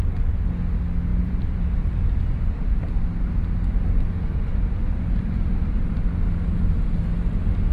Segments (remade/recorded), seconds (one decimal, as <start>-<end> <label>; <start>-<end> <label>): 0.0-1.1 recorded; 1.1-3.1 remade; 3.1-7.7 recorded